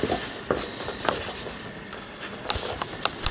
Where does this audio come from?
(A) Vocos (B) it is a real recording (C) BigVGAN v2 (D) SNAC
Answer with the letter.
B